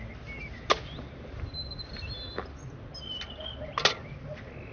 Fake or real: real